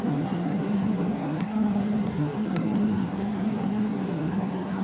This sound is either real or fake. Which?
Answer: fake